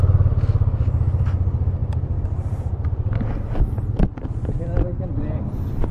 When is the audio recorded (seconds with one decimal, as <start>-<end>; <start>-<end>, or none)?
0.0-1.8; 2.9-5.9